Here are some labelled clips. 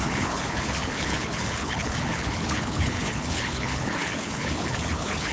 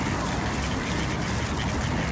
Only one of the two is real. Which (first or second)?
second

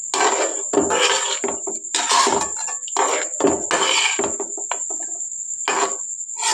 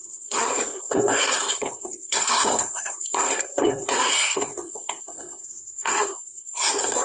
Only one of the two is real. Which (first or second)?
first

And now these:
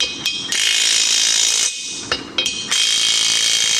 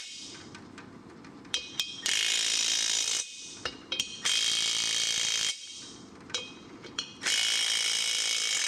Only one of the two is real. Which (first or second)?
first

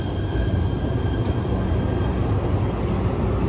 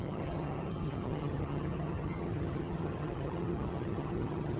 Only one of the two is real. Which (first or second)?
first